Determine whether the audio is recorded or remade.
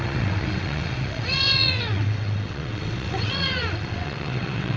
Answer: remade